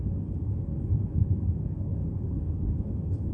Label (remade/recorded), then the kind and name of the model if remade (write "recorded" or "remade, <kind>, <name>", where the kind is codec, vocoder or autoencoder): remade, codec, DAC